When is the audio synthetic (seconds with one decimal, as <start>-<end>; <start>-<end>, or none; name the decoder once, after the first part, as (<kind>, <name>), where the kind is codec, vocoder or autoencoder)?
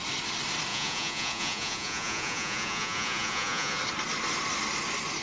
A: 0.7-3.8 (vocoder, Vocos)